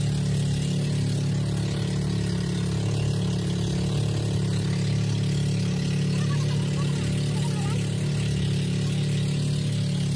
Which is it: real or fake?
real